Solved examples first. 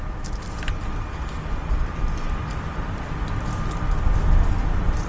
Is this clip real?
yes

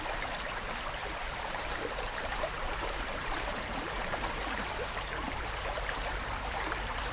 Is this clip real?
no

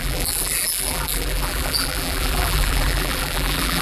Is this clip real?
no